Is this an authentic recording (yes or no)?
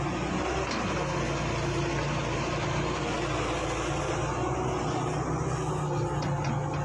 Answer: yes